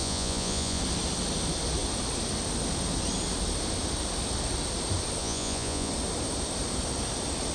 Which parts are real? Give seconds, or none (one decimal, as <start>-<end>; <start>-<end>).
0.8-5.2; 5.9-7.5